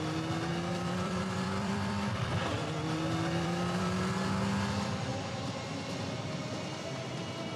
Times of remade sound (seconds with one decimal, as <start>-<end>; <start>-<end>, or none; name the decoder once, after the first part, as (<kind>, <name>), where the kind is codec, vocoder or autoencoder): 0.5-4.1 (vocoder, BigVGAN v2); 5.1-6.4

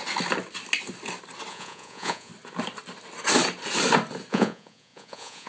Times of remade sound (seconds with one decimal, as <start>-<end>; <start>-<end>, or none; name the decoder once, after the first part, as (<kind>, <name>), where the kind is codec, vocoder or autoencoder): 1.5-2.3 (vocoder, Vocos); 4.3-5.5

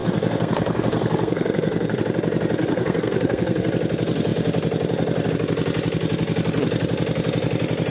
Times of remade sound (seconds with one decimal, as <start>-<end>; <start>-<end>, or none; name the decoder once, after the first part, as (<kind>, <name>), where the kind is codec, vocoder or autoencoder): 0.0-2.0 (codec, SNAC); 2.6-3.7